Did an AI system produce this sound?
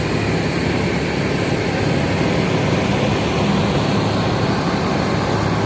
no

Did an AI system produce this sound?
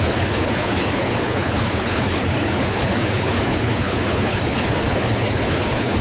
yes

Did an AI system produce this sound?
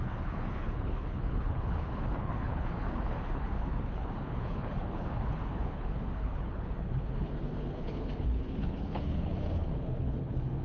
yes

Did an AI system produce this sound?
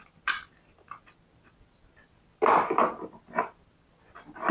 no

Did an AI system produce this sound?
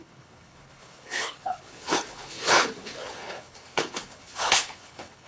yes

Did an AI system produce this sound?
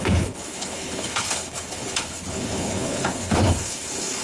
yes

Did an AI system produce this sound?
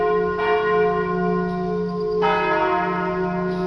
no